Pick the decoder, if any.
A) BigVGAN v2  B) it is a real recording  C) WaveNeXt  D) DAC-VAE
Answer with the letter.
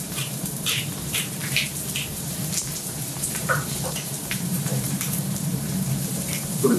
A